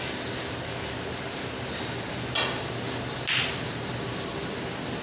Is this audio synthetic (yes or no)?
no